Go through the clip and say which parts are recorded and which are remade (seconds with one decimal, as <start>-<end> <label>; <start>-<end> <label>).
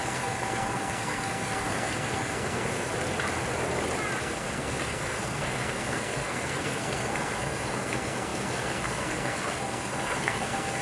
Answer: 0.0-2.9 remade; 2.9-4.2 recorded; 4.2-10.8 remade